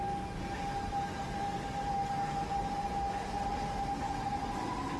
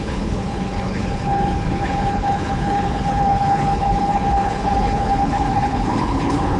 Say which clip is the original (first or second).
first